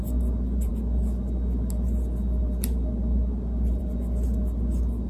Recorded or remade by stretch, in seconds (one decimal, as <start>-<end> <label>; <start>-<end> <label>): 0.0-5.1 recorded